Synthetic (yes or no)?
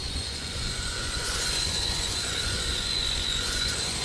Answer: yes